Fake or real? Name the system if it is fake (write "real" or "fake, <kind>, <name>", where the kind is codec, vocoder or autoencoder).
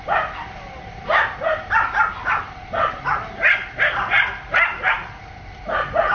real